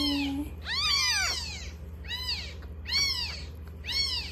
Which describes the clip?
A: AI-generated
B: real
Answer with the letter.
B